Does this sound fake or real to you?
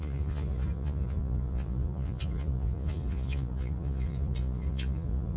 fake